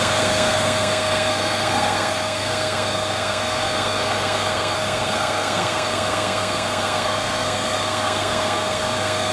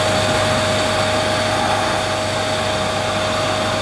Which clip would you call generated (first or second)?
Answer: first